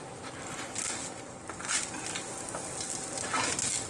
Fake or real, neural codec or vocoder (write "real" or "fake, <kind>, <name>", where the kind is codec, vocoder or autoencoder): real